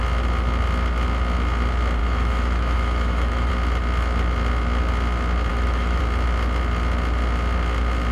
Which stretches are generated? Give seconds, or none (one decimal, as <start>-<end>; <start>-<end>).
2.0-3.5; 5.5-6.0